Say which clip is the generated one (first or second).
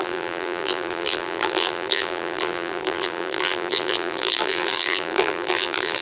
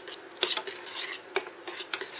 first